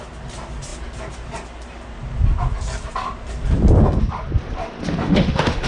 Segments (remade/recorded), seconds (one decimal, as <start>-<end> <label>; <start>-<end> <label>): 0.0-5.0 recorded; 5.0-5.7 remade